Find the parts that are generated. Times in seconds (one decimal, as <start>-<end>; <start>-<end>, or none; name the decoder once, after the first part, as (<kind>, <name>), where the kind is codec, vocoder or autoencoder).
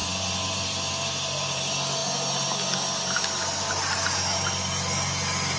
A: 0.0-1.6 (vocoder, BigVGAN v2)